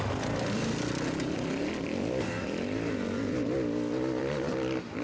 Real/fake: fake